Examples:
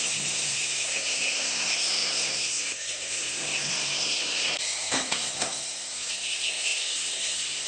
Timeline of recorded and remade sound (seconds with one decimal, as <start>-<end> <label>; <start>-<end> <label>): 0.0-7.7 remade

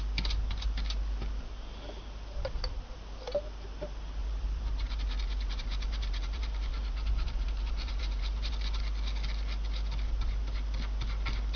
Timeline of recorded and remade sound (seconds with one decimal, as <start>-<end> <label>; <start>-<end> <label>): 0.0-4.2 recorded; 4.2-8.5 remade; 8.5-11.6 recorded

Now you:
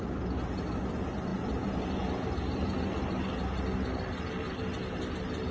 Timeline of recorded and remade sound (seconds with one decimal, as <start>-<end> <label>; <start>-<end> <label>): 0.0-5.5 recorded